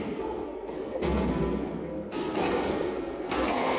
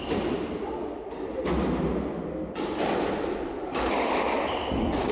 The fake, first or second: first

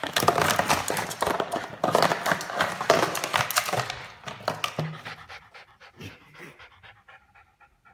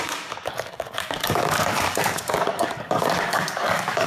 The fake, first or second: second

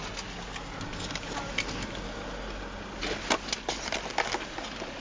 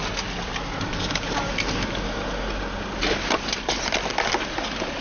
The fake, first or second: second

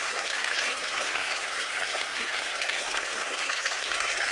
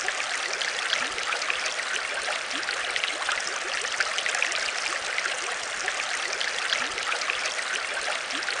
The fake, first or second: first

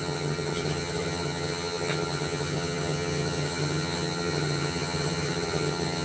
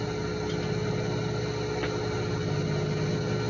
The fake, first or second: first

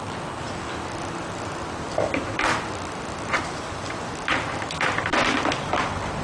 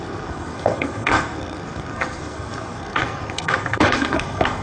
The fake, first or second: second